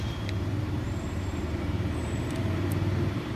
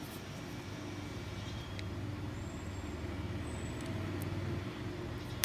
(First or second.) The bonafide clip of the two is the second